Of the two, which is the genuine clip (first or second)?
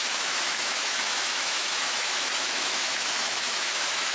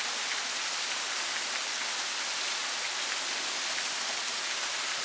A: second